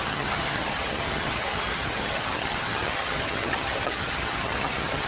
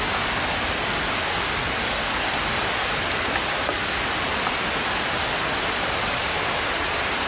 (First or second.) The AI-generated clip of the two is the first